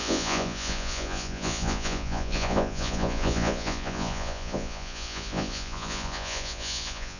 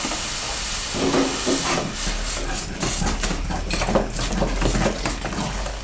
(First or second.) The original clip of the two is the second